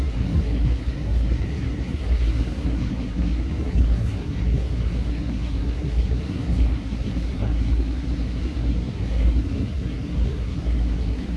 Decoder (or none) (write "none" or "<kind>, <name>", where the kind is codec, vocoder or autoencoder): codec, SNAC